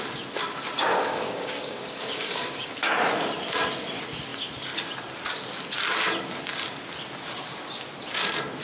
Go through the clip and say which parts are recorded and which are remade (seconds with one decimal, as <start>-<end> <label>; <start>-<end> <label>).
0.0-0.9 recorded; 0.9-2.7 remade; 2.7-8.6 recorded